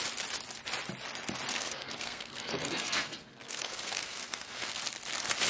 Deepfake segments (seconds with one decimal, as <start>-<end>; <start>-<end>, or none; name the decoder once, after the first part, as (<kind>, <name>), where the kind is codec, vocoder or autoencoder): 1.5-4.8 (codec, SNAC)